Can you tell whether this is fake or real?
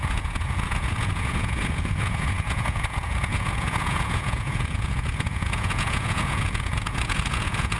fake